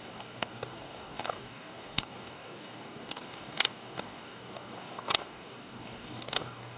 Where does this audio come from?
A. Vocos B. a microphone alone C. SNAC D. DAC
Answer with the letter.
D